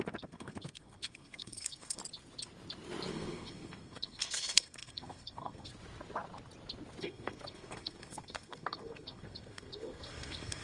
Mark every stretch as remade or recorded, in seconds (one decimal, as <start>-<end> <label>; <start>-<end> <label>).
0.0-2.0 remade; 2.0-3.1 recorded; 3.1-5.7 remade; 5.7-7.0 recorded; 7.0-10.6 remade